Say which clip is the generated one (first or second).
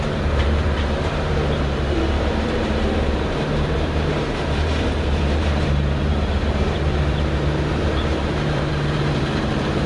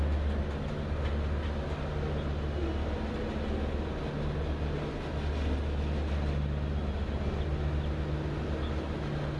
first